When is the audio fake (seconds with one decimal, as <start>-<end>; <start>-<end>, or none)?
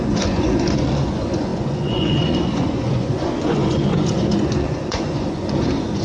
0.0-6.0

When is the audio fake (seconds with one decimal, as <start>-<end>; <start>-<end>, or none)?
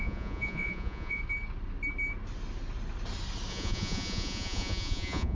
0.0-1.2; 3.5-5.3